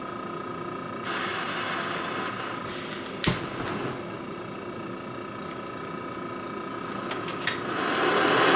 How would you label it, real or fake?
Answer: real